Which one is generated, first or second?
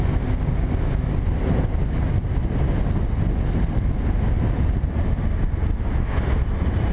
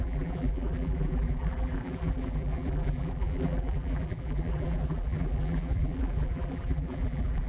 second